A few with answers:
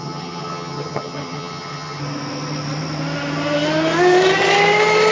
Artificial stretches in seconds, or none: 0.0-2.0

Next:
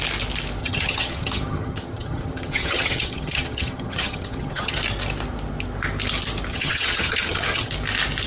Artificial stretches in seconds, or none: 0.6-4.8; 6.5-7.7

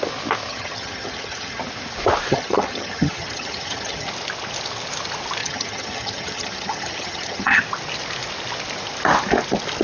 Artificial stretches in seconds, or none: 0.5-1.6; 2.3-4.1; 5.4-7.6

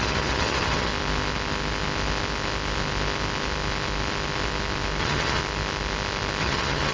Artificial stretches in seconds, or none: 0.0-0.9; 5.0-5.4; 6.4-6.9

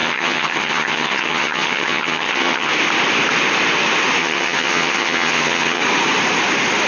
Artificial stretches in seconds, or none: 0.0-2.7; 4.2-5.8

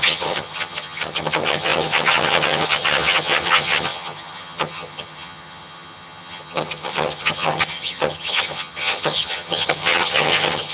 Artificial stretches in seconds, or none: 0.0-10.7

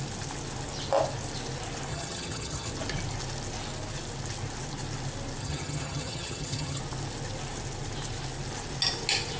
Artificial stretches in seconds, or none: 1.9-2.7; 5.4-6.8

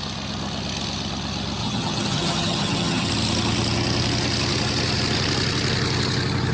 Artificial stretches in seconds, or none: 1.6-3.1